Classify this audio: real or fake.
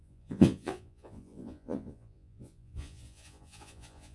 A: fake